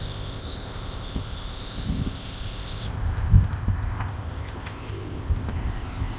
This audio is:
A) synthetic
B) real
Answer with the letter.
A